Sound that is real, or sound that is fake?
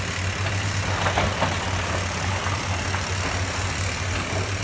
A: real